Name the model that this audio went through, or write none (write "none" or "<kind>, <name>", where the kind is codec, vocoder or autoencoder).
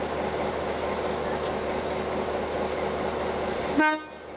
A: none